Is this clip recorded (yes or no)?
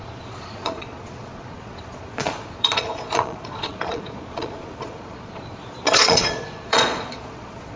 no